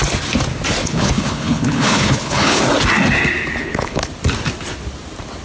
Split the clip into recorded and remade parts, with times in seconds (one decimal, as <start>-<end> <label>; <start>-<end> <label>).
0.0-0.8 recorded; 0.8-2.6 remade; 2.6-3.6 recorded; 3.6-4.1 remade; 4.1-5.4 recorded